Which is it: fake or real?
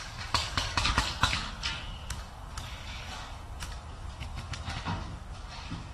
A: fake